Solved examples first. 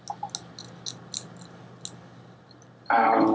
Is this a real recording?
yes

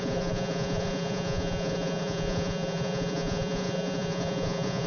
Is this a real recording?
no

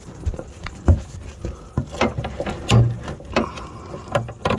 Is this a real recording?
yes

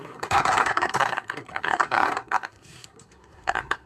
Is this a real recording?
no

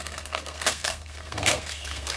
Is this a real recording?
no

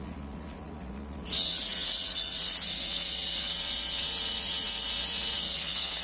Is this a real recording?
no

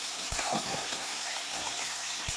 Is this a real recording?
no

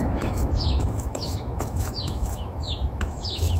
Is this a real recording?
no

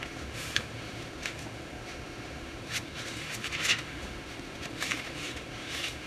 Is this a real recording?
no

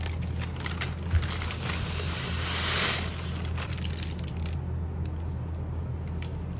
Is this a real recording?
yes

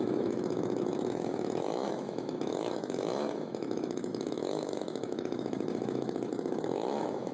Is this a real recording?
no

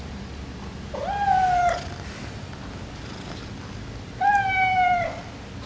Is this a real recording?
yes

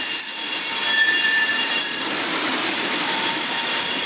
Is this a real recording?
no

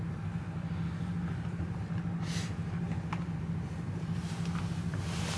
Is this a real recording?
yes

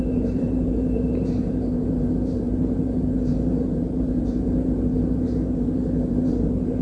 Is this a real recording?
no